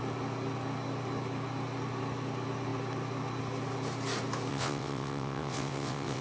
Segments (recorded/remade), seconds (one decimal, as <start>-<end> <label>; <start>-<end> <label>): 0.0-4.5 recorded; 4.5-6.2 remade